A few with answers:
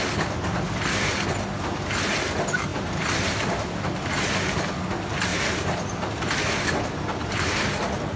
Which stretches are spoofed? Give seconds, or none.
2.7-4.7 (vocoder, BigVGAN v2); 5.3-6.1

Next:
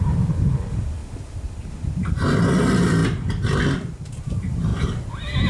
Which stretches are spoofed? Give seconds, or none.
0.0-1.0 (vocoder, BigVGAN v2); 2.1-3.0; 4.2-4.7

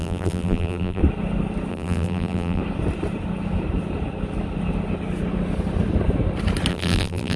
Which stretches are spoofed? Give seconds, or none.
0.0-1.0 (vocoder, BigVGAN v2); 1.7-2.6; 6.7-7.4